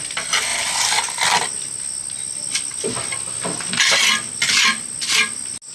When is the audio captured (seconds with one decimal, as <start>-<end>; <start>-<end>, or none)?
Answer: 0.0-5.7